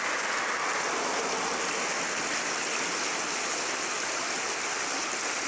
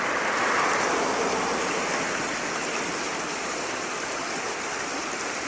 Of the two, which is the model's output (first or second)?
second